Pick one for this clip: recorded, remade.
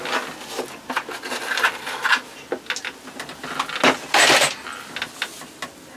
recorded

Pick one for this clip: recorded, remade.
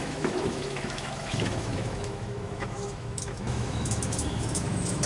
remade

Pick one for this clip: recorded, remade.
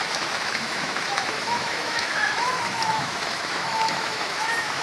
remade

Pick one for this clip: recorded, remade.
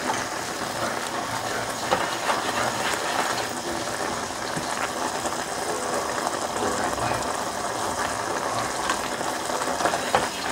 recorded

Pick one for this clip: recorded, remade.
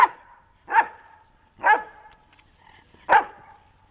recorded